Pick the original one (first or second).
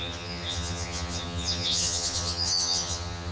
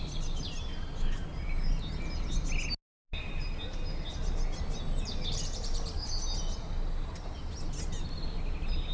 second